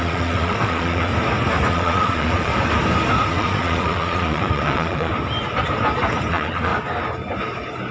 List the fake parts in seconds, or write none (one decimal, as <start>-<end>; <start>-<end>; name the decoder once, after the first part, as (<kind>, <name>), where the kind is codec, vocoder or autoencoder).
0.0-1.1 (vocoder, Vocos); 1.7-2.5; 3.3-5.1; 6.3-6.7